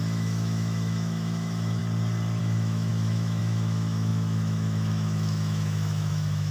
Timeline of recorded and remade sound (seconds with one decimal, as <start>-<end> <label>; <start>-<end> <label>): 0.0-1.8 remade; 1.8-2.4 recorded; 2.4-6.5 remade